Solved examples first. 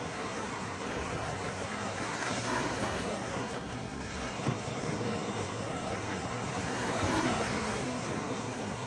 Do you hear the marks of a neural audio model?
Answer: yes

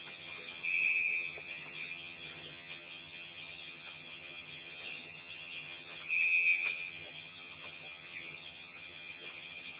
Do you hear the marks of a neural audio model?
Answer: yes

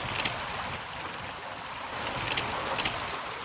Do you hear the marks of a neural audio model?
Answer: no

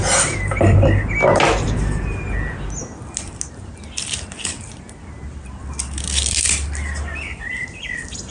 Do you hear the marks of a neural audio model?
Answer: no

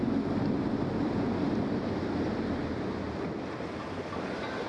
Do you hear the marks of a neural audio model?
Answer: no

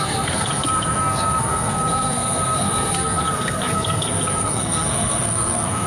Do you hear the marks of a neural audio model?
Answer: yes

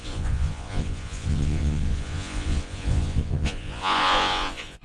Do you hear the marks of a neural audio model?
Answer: yes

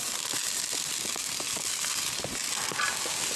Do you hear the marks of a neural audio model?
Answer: no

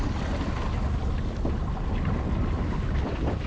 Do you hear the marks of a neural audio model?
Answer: no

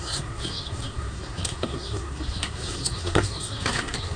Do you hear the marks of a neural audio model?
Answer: yes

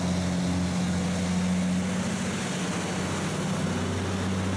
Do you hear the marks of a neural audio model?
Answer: no